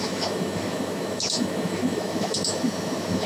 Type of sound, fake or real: fake